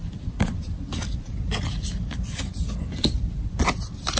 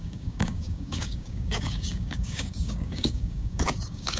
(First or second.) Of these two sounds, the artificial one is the second